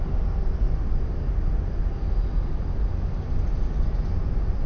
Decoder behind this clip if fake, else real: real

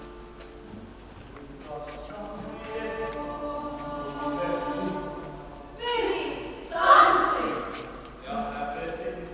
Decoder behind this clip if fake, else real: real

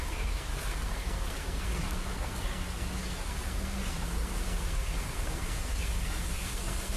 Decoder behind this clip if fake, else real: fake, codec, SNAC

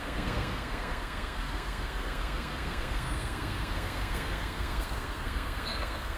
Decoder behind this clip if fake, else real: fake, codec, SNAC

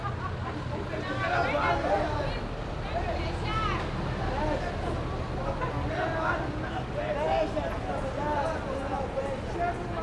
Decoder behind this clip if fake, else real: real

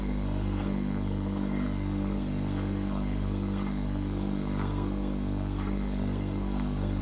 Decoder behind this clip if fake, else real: fake, codec, SNAC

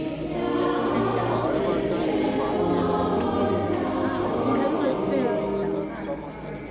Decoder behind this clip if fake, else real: real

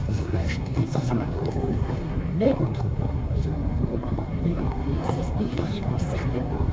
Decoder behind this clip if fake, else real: fake, codec, SNAC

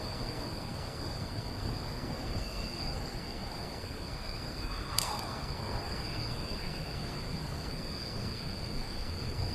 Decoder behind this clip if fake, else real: fake, codec, SNAC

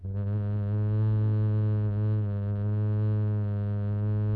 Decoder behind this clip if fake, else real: real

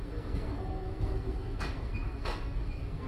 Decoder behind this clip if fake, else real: fake, codec, SNAC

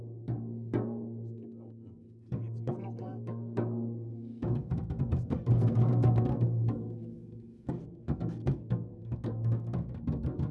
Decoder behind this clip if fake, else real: fake, codec, SNAC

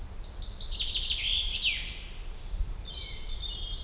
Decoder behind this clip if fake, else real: real